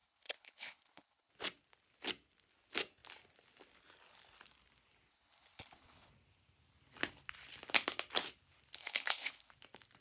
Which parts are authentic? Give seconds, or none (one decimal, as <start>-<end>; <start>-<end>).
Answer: 1.3-5.1; 6.1-8.8; 9.5-10.0